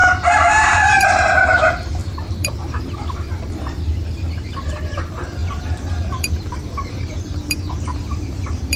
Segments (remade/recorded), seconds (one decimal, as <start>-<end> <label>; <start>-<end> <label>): 0.0-0.5 recorded; 0.5-8.8 remade